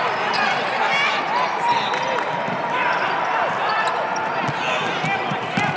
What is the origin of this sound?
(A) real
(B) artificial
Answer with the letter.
A